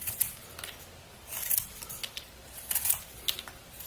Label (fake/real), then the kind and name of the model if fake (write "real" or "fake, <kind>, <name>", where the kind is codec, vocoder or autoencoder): real